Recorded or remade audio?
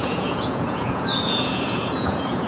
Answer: remade